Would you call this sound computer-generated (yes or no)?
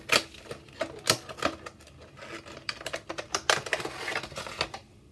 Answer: no